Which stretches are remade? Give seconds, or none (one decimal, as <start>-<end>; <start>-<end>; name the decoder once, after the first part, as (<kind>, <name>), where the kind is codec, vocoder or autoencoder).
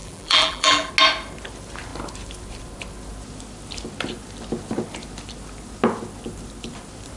0.0-0.9 (vocoder, BigVGAN v2)